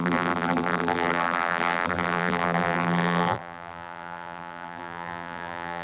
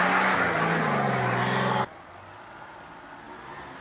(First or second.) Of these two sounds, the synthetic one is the first